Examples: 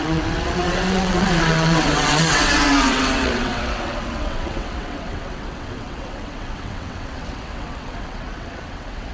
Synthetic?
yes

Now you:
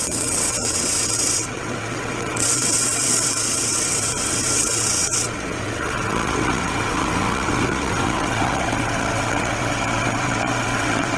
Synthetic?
yes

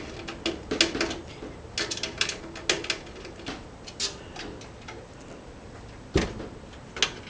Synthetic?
no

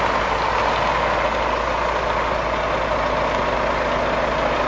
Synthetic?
no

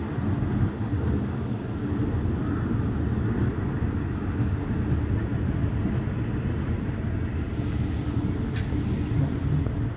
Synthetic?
no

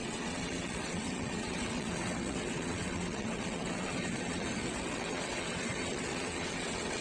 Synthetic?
yes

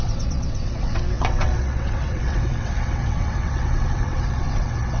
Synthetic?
yes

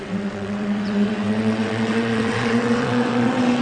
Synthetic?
yes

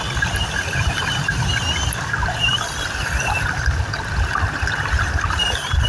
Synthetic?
no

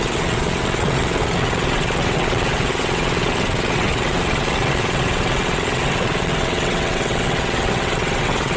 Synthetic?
yes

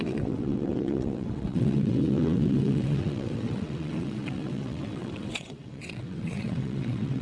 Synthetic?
yes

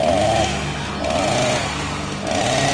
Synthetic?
no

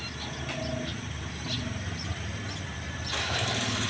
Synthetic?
no